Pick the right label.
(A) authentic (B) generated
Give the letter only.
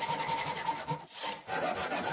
A